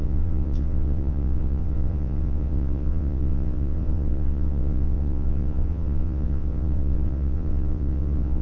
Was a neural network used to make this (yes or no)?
yes